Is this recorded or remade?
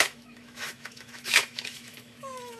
remade